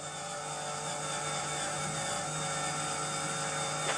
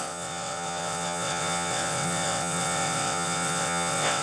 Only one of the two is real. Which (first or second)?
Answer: first